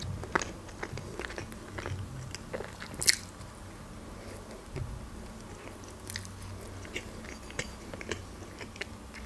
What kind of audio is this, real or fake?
real